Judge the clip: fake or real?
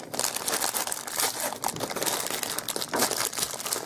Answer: real